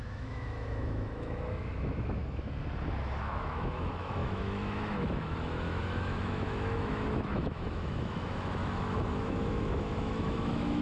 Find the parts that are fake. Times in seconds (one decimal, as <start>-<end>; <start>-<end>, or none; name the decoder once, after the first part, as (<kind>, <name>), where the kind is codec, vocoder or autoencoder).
0.0-2.2 (autoencoder, DAC-VAE); 3.2-10.8